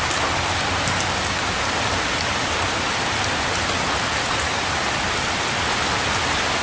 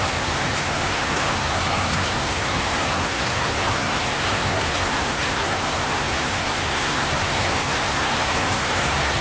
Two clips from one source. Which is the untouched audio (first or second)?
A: first